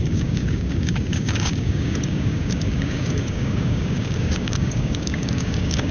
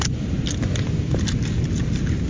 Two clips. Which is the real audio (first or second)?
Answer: second